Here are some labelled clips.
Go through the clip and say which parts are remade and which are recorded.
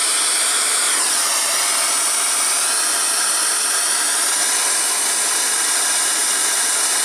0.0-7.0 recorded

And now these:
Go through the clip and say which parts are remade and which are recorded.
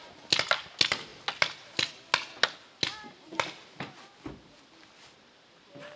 0.0-6.0 recorded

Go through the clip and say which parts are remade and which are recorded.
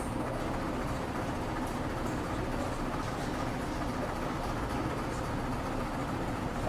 0.0-6.0 recorded; 6.0-6.7 remade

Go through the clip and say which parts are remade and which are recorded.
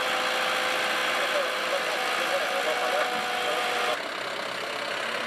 0.0-5.3 recorded